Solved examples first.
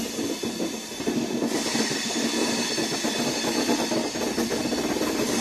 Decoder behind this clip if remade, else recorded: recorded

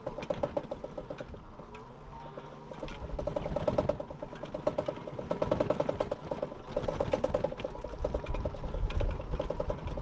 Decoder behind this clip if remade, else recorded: recorded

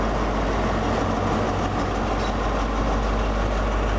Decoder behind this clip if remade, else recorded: recorded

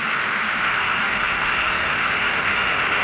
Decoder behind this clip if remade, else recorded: remade, autoencoder, DAC-VAE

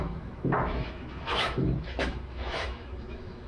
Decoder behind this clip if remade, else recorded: remade, autoencoder, DAC-VAE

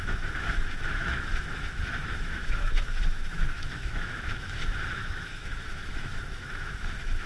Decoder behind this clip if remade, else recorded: remade, autoencoder, DAC-VAE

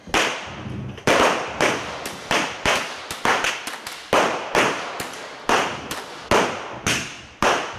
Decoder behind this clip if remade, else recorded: recorded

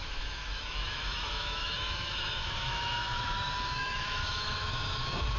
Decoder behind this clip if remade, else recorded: remade, autoencoder, DAC-VAE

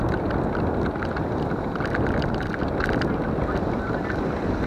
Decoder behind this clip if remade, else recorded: recorded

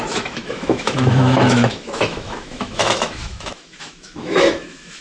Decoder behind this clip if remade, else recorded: remade, autoencoder, DAC-VAE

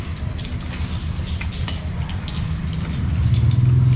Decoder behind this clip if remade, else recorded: recorded